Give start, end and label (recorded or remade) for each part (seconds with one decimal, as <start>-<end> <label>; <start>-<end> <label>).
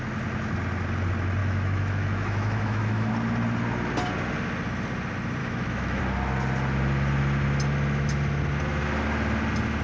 0.0-1.4 recorded; 1.4-3.1 remade; 3.1-5.4 recorded; 5.4-6.0 remade; 6.0-9.8 recorded